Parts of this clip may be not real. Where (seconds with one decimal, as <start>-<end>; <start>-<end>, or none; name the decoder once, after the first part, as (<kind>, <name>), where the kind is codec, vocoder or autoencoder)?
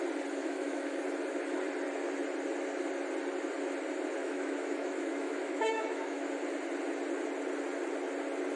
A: 0.4-1.0 (autoencoder, DAC-VAE); 4.2-6.3